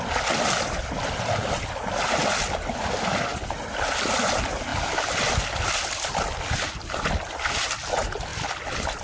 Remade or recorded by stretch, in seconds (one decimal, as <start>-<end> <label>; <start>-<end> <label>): 0.0-3.3 recorded; 3.3-4.1 remade; 4.1-4.7 recorded; 4.7-5.3 remade; 5.3-8.3 recorded; 8.3-9.0 remade